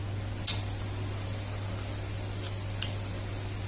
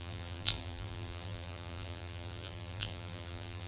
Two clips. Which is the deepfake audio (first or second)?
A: second